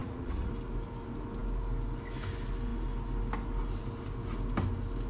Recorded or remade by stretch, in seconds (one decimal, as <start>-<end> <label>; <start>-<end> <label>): 0.0-0.5 remade; 0.5-5.1 recorded